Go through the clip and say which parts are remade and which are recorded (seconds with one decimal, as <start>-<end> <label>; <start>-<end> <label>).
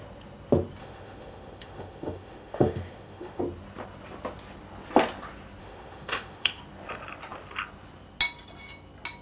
0.0-0.8 recorded; 0.8-3.4 remade; 3.4-5.6 recorded; 5.6-6.6 remade; 6.6-9.2 recorded